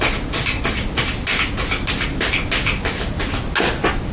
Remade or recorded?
recorded